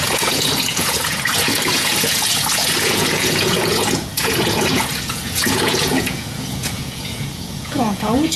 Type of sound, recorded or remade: remade